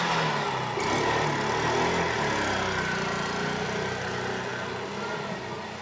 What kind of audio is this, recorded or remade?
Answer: recorded